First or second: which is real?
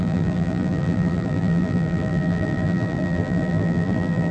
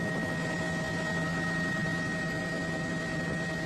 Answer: second